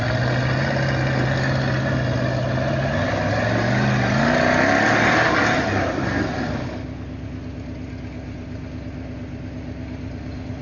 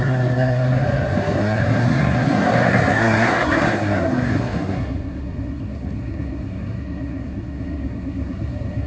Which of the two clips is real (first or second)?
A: first